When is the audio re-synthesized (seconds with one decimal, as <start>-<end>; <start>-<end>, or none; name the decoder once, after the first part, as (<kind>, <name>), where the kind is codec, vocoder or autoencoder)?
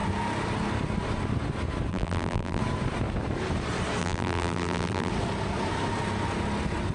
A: 1.9-2.6 (vocoder, BigVGAN v2); 4.0-5.1